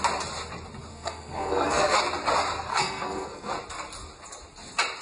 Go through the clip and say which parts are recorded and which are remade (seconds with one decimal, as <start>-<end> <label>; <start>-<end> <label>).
0.0-0.9 recorded; 0.9-2.0 remade; 2.0-2.7 recorded; 2.7-3.5 remade; 3.5-5.0 recorded